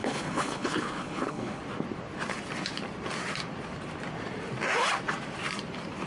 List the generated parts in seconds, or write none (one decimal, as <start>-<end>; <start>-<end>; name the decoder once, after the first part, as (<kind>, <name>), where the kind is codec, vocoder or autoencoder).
0.0-1.6 (codec, HILCodec)